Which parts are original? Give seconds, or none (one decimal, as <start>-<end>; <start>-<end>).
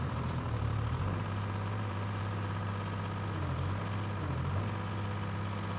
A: 2.7-5.8